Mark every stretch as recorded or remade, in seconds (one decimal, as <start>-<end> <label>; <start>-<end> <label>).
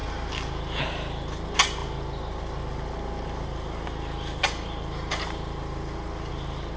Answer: 0.0-6.8 recorded